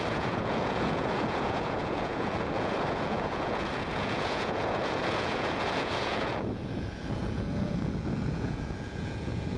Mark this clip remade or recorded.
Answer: remade